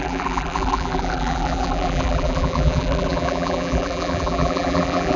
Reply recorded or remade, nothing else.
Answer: remade